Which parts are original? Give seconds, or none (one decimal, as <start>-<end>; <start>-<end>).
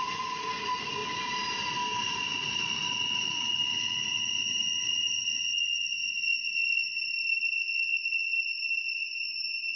1.0-2.0